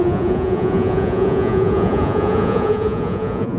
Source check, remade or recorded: remade